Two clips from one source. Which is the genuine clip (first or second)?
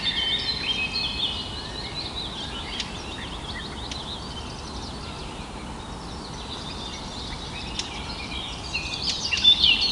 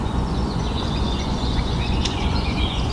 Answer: first